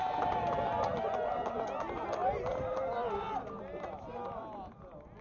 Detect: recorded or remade recorded